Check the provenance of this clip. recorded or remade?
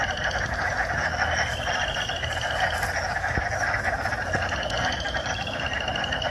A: recorded